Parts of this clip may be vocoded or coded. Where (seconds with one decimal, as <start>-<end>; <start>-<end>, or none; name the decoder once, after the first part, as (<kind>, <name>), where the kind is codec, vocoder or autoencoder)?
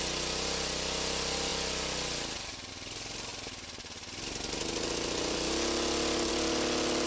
none